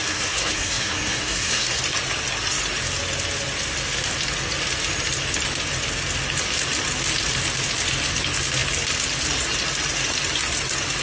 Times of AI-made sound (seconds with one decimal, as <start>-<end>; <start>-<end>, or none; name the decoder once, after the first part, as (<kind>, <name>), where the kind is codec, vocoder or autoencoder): 0.0-1.8 (codec, SNAC)